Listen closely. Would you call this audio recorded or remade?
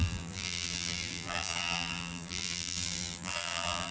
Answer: remade